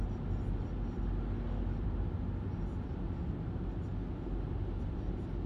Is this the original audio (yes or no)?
yes